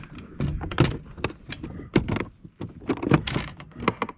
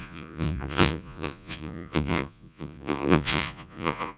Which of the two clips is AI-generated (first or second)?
second